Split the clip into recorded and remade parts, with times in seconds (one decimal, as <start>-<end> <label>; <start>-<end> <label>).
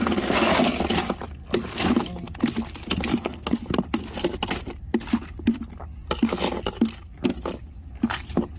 0.0-3.1 recorded; 3.1-3.6 remade; 3.6-8.6 recorded